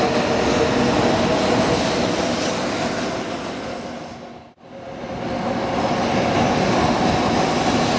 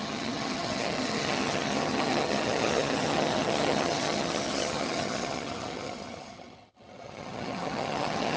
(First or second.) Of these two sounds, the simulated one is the second